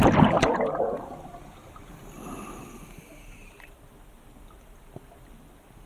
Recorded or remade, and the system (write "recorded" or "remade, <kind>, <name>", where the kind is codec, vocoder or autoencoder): recorded